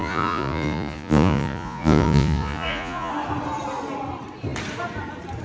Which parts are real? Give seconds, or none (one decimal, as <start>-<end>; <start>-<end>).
3.1-5.4